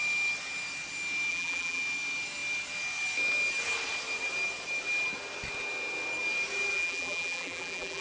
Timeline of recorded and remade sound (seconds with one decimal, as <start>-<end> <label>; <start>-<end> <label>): 0.0-1.3 recorded; 1.3-1.8 remade; 1.8-6.7 recorded; 6.7-8.0 remade